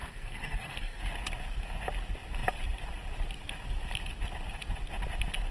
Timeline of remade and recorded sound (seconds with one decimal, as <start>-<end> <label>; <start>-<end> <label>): 0.0-1.0 remade; 1.0-5.5 recorded